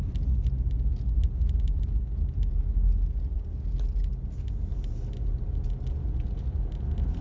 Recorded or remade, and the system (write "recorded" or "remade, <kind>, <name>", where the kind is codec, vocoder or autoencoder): recorded